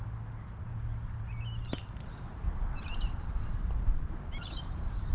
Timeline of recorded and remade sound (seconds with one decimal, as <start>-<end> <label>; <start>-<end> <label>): 0.0-1.8 recorded; 1.8-5.1 remade